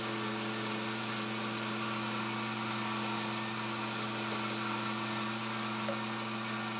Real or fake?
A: real